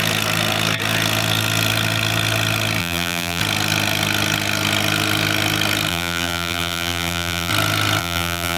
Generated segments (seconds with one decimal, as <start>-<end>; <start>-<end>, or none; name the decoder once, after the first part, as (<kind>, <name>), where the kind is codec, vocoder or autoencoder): 2.8-3.4 (vocoder, BigVGAN v2); 5.9-7.5; 8.0-8.6